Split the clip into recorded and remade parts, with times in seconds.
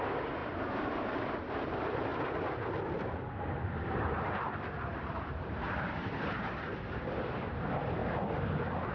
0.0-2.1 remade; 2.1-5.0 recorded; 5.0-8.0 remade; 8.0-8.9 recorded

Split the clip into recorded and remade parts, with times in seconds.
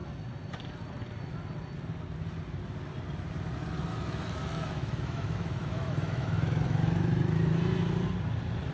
0.0-3.9 recorded; 3.9-7.5 remade; 7.5-8.7 recorded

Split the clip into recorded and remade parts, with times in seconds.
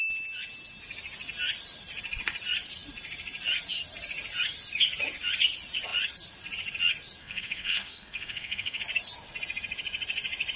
0.0-7.2 recorded; 7.2-8.8 remade; 8.8-10.6 recorded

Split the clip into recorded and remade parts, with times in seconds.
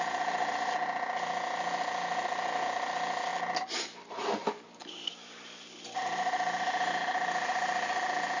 0.0-8.4 recorded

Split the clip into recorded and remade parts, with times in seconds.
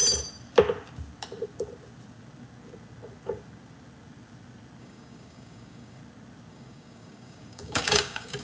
0.0-4.8 recorded; 4.8-6.0 remade; 6.0-6.5 recorded; 6.5-8.4 remade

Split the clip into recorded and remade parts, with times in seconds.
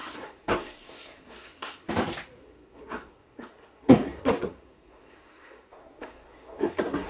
0.0-1.9 remade; 1.9-2.4 recorded; 2.4-7.1 remade